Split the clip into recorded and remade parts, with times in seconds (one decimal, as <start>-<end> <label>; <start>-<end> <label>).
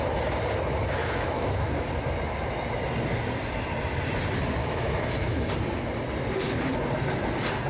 0.0-1.0 recorded; 1.0-1.9 remade; 1.9-4.6 recorded; 4.6-5.5 remade; 5.5-7.7 recorded